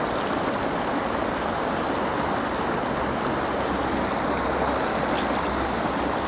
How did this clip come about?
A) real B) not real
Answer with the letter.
A